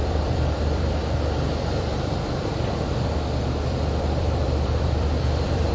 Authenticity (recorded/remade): remade